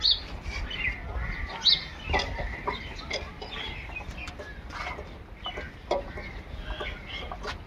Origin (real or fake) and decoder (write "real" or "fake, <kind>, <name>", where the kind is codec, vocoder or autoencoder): real